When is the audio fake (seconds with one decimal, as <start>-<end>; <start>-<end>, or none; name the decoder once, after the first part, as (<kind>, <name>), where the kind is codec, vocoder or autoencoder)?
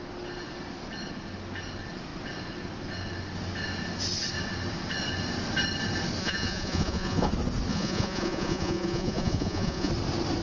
6.2-7.3 (vocoder, Vocos); 7.7-9.9